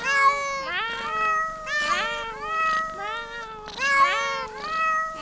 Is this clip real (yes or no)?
yes